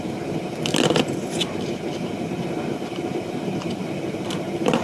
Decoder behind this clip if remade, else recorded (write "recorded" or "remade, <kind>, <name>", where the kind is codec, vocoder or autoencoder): recorded